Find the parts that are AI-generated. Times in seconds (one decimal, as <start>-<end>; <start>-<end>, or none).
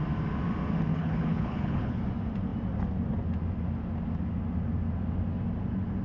0.9-2.0